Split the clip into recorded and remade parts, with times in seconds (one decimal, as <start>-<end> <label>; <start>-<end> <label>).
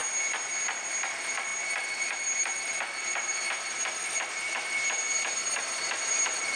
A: 0.0-1.1 recorded; 1.1-6.6 remade